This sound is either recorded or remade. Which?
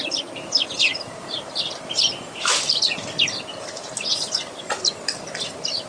remade